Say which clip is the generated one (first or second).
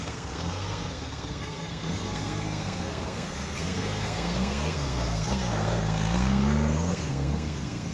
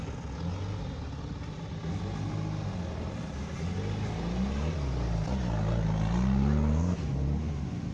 first